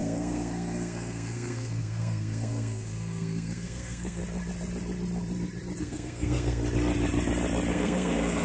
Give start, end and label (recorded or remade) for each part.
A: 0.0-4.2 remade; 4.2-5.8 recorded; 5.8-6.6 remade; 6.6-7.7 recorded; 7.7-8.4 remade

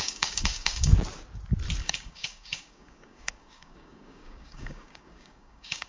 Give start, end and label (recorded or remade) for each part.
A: 0.0-0.9 remade; 0.9-1.8 recorded; 1.8-5.9 remade

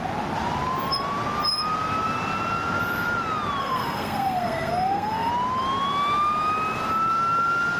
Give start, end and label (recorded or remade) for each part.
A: 0.0-3.6 recorded; 3.6-5.3 remade; 5.3-7.8 recorded